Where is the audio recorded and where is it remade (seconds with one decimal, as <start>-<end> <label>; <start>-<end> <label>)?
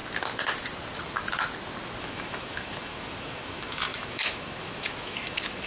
0.0-2.0 recorded; 2.0-5.7 remade